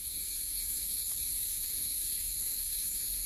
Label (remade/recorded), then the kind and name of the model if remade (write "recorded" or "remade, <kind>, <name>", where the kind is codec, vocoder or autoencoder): remade, codec, SNAC